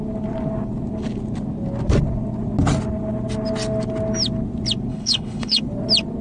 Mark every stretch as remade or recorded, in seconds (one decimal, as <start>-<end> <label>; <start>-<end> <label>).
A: 0.0-4.9 recorded; 4.9-5.6 remade; 5.6-6.2 recorded